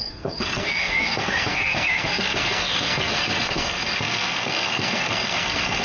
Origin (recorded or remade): remade